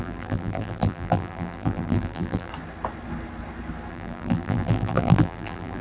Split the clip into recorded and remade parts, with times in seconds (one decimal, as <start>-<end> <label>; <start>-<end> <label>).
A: 0.0-2.5 remade; 2.5-3.9 recorded; 3.9-5.8 remade